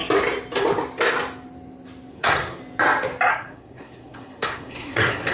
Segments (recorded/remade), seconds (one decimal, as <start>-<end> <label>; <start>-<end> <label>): 0.0-2.1 recorded; 2.1-2.6 remade; 2.6-3.3 recorded; 3.3-5.3 remade

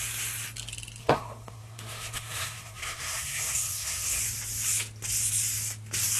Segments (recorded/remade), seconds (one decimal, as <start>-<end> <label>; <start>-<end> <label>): 0.0-1.0 recorded; 1.0-4.2 remade; 4.2-6.2 recorded

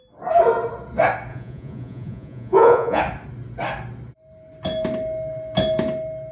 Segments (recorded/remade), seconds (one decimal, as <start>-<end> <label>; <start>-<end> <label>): 0.0-1.3 recorded; 1.3-3.0 remade; 3.0-6.3 recorded

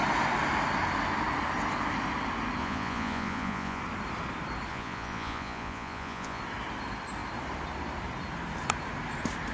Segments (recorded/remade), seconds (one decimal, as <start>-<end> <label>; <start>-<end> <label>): 0.0-2.6 recorded; 2.6-3.8 remade; 3.8-4.7 recorded; 4.7-6.4 remade; 6.4-9.5 recorded

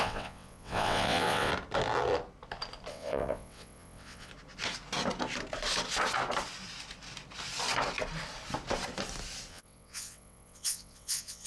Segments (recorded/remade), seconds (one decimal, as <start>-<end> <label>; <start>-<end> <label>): 0.0-1.5 remade; 1.5-2.9 recorded; 2.9-4.3 remade; 4.3-9.5 recorded; 9.5-11.5 remade

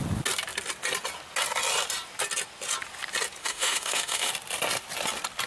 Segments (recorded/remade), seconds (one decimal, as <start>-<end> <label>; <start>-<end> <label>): 0.0-3.4 recorded; 3.4-4.3 remade; 4.3-5.5 recorded

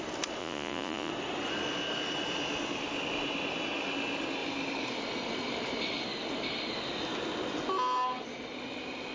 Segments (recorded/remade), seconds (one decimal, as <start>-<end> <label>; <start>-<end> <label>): 0.0-0.4 recorded; 0.4-1.1 remade; 1.1-9.1 recorded